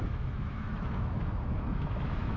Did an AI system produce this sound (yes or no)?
yes